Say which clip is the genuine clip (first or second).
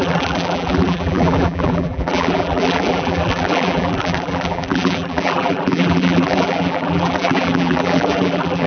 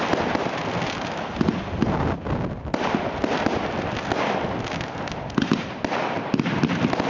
second